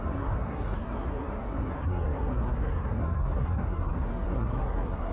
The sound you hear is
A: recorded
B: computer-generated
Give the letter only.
B